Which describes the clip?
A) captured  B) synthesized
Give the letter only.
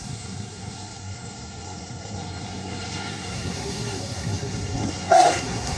B